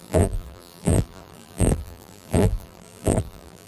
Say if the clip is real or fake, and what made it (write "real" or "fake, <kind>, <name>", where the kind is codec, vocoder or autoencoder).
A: fake, vocoder, BigVGAN v2